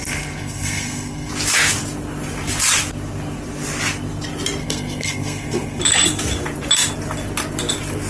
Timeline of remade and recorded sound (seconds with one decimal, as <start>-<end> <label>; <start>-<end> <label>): 0.0-1.3 remade; 1.3-4.6 recorded; 4.6-5.8 remade; 5.8-8.1 recorded